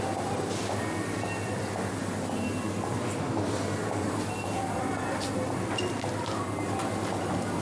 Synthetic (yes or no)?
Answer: no